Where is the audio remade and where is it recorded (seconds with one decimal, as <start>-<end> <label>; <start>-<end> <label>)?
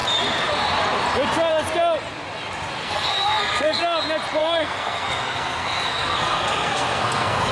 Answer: 0.0-2.8 recorded; 2.8-3.8 remade; 3.8-4.4 recorded; 4.4-7.5 remade